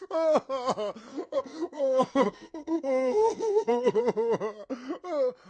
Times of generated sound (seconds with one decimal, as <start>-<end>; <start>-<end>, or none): 1.1-4.0